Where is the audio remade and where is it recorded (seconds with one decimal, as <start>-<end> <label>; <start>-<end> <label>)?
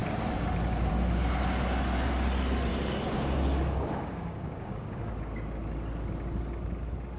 0.0-2.7 recorded; 2.7-5.1 remade; 5.1-7.2 recorded